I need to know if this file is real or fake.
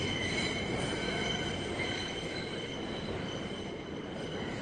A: real